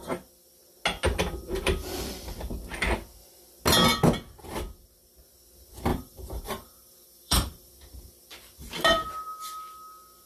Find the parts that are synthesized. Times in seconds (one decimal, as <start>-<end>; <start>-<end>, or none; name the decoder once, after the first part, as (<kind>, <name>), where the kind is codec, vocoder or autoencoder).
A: 5.9-7.7 (vocoder, BigVGAN v2)

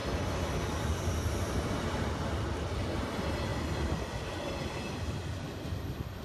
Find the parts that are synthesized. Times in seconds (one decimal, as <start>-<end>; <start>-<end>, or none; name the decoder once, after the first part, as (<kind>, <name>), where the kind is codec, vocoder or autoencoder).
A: none

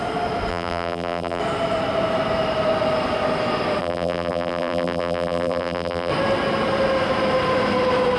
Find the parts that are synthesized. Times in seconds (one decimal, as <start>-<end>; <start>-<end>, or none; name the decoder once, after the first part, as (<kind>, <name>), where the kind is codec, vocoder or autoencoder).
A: 0.5-1.4 (vocoder, BigVGAN v2); 3.8-6.1

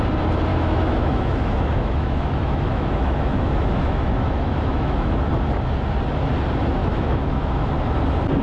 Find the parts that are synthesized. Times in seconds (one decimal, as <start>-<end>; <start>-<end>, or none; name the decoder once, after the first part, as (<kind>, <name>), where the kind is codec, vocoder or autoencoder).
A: 0.5-5.2 (autoencoder, DAC-VAE); 6.8-7.7